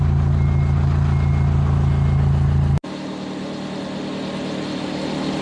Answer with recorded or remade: recorded